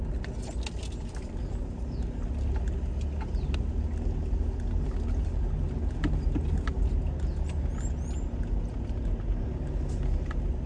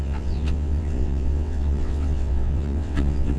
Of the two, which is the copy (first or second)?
second